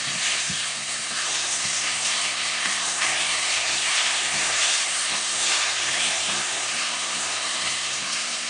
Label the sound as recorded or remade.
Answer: remade